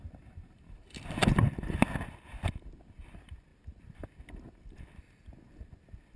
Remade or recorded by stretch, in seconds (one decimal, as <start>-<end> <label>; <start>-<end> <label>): 0.0-6.2 recorded